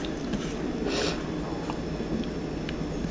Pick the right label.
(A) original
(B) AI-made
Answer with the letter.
A